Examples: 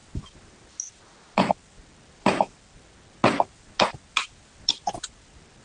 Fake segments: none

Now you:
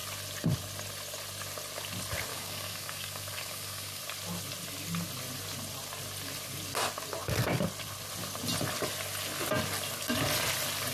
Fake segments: 2.3-4.0 (codec, DAC)

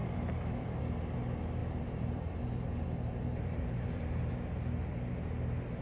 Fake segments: 0.0-0.8 (vocoder, BigVGAN v2); 1.6-4.3

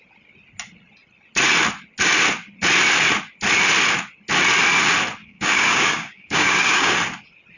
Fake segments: 5.2-6.9 (codec, DAC)